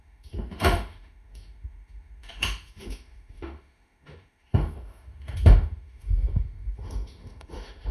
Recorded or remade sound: remade